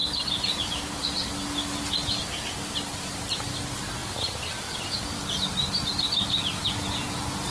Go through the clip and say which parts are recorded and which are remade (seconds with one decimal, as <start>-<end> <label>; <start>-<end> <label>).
0.0-1.3 remade; 1.3-4.0 recorded; 4.0-4.8 remade; 4.8-7.5 recorded